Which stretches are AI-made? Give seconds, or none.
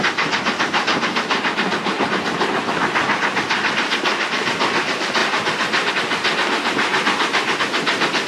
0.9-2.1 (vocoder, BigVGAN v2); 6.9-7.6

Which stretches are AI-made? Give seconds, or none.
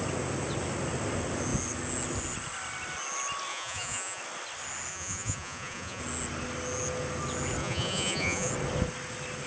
3.5-4.2 (vocoder, Vocos); 4.9-6.0; 7.6-8.5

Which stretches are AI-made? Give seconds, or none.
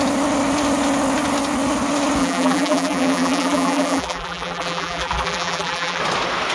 2.2-6.0 (vocoder, BigVGAN v2)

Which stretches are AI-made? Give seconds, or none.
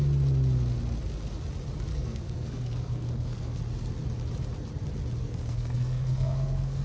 1.9-3.6 (codec, SNAC); 5.2-6.8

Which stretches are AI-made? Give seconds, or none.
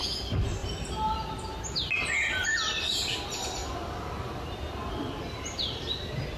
none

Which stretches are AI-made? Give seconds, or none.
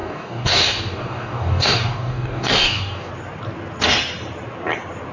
0.0-3.1 (codec, DAC)